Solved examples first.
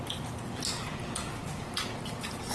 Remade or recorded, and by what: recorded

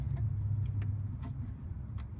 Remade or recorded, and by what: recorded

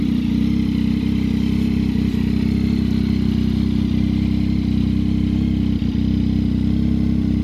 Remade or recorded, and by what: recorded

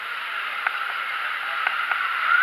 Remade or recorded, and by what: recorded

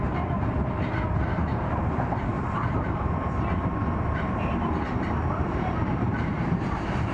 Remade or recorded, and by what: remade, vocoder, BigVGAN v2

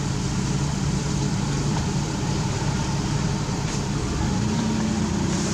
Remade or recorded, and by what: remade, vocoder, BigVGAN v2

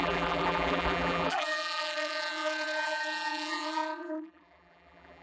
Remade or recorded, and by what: remade, vocoder, BigVGAN v2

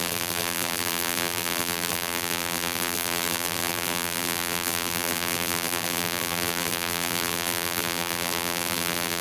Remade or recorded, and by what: remade, vocoder, BigVGAN v2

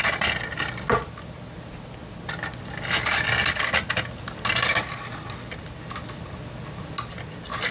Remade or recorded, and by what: recorded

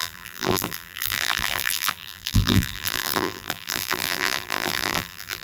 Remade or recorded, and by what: remade, vocoder, BigVGAN v2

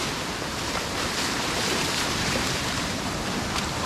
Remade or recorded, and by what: remade, vocoder, BigVGAN v2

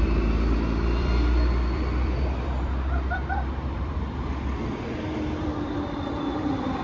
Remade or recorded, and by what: remade, vocoder, BigVGAN v2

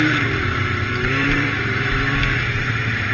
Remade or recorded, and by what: remade, vocoder, BigVGAN v2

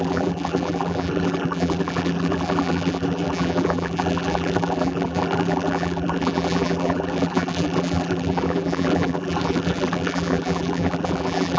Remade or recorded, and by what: remade, vocoder, BigVGAN v2